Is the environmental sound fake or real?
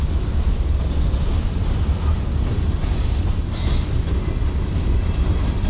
real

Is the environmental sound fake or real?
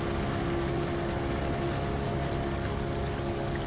real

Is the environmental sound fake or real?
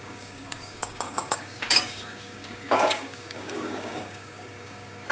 fake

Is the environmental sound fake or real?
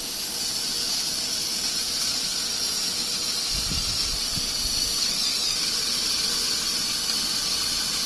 real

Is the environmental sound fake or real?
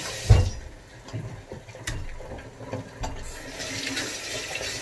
real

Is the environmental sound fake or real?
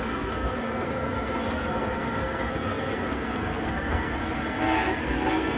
fake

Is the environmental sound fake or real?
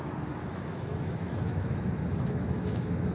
fake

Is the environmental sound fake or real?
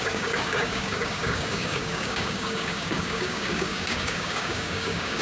fake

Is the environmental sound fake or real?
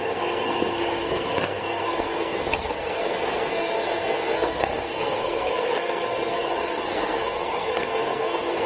fake